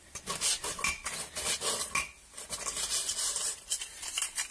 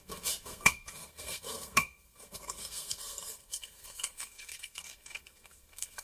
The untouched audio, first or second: first